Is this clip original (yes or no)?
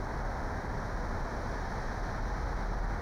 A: yes